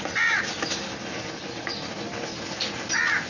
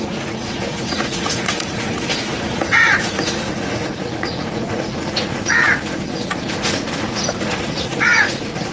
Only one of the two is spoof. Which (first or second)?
second